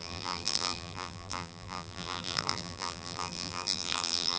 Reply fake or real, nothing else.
fake